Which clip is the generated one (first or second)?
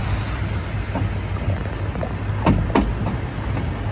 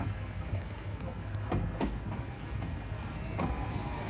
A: second